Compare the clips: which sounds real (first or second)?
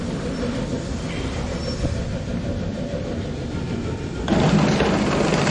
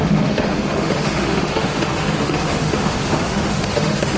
first